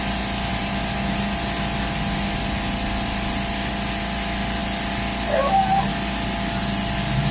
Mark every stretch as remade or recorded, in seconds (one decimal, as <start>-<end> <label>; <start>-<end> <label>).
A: 0.0-7.3 recorded